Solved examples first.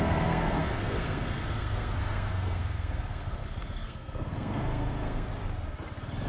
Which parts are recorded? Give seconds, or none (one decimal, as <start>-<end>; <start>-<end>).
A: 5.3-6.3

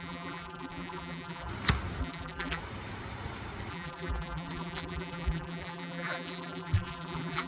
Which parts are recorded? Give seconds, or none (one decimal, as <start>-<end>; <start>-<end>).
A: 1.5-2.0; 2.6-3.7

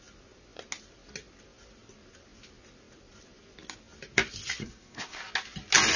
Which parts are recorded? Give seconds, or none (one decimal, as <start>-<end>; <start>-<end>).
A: 0.0-4.6; 5.2-6.0